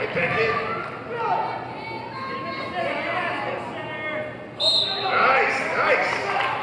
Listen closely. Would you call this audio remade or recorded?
recorded